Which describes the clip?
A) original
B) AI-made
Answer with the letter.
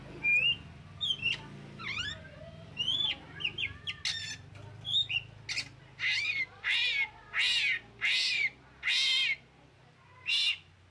A